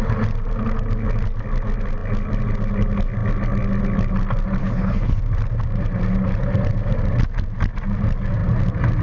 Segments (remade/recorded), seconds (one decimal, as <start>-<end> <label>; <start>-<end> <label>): 0.0-4.6 recorded; 4.6-5.2 remade; 5.2-9.0 recorded